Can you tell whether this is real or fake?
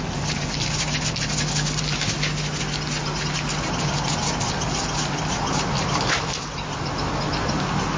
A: real